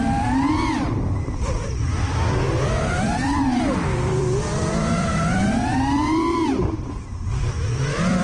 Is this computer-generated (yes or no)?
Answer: yes